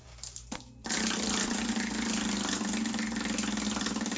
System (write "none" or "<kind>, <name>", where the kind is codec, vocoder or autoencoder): none